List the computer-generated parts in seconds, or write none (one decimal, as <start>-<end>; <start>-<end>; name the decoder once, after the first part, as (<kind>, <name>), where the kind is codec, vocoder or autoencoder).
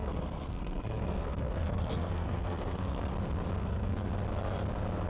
0.0-3.1 (codec, SNAC); 3.6-4.1